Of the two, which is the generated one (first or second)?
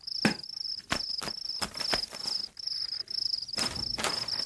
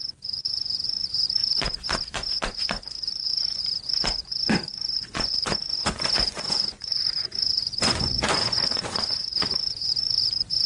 second